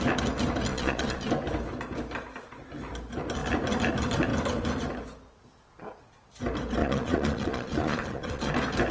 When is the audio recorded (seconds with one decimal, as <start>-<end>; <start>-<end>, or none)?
0.0-0.7; 1.2-6.8; 8.5-8.9